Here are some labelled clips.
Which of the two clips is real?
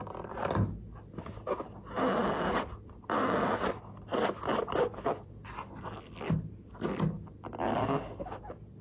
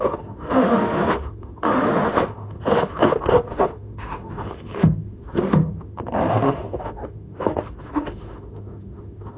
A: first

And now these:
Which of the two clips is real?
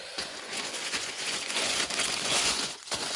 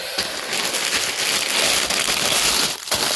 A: second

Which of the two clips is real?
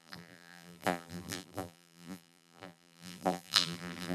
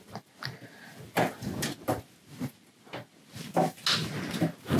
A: second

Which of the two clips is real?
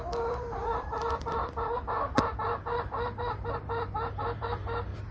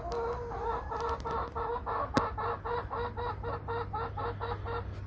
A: second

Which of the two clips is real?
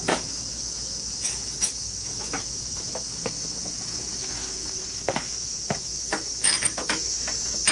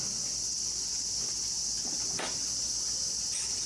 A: second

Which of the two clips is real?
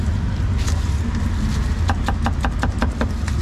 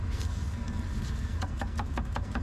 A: first